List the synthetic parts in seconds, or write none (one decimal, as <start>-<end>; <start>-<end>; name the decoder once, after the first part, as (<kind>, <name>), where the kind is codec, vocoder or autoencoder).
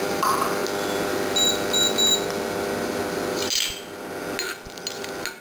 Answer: 0.0-0.6 (vocoder, BigVGAN v2); 1.1-2.1